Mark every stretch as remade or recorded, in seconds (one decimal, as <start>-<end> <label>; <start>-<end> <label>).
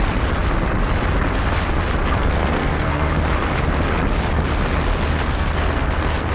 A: 0.0-2.0 recorded; 2.0-3.1 remade; 3.1-5.3 recorded; 5.3-6.3 remade